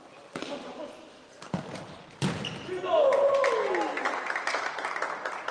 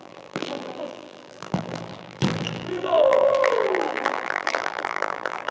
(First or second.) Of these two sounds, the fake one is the second